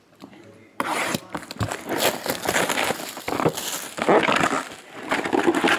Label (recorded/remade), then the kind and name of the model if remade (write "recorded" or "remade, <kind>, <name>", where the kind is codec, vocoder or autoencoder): remade, vocoder, BigVGAN v2